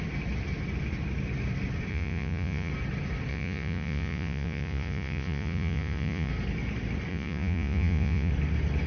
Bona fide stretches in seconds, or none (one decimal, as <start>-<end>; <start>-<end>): 0.0-1.9; 2.7-3.3; 6.3-7.1; 8.3-8.9